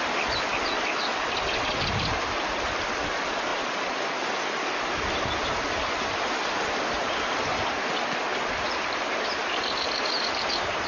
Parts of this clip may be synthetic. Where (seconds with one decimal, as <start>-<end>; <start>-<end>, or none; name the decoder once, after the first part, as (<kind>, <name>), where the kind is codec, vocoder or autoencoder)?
8.3-10.5 (vocoder, BigVGAN v2)